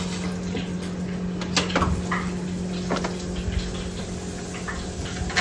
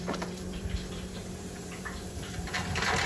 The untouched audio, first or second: first